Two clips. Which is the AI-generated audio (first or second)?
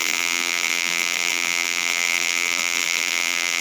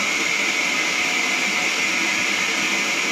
first